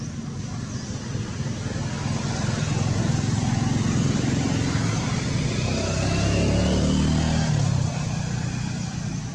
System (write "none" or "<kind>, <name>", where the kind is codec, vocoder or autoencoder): none